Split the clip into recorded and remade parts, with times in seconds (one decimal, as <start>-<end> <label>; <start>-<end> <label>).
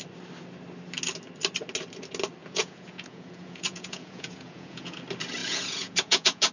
0.0-2.4 recorded; 2.4-5.0 remade; 5.0-5.4 recorded; 5.4-6.5 remade